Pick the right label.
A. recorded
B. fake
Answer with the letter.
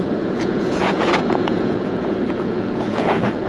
B